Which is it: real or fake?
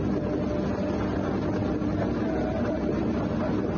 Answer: real